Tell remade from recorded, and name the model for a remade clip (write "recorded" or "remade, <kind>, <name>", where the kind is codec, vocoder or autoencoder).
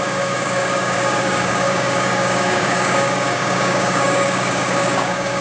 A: remade, codec, DAC